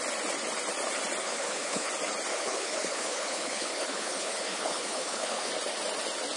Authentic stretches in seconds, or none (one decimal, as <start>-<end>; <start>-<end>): 0.0-1.2; 1.9-2.3; 5.5-6.4